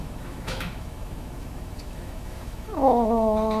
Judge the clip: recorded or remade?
remade